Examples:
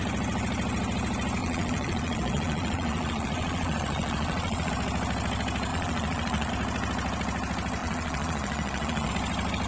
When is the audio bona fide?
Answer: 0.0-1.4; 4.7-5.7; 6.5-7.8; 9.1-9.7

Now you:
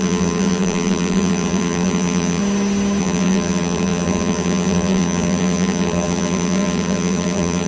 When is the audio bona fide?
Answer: 2.4-3.0

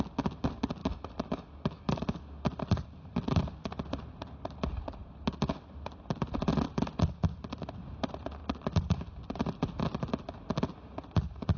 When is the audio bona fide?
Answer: 0.0-0.8; 2.2-11.6

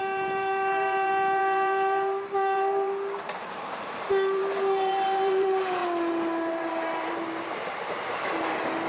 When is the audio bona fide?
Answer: 5.8-6.5

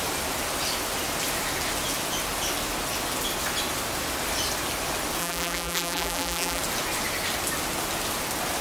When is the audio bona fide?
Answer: 0.0-5.2; 6.6-8.6

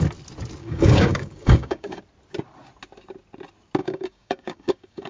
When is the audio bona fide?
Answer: 0.0-0.6; 2.0-3.8